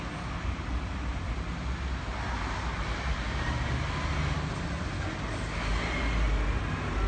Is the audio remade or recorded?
recorded